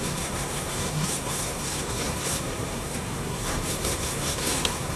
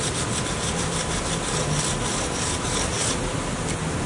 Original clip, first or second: second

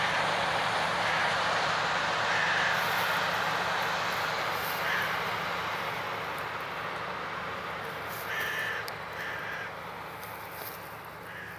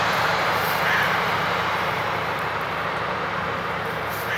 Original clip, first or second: first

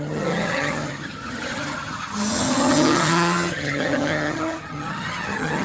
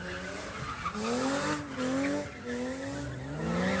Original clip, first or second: second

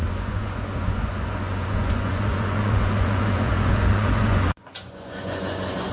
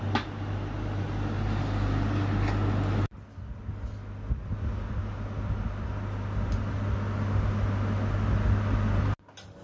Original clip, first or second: second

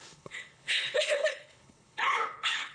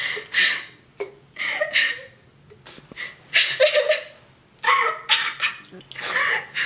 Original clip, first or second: second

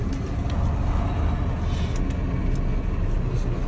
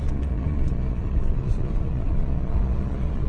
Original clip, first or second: first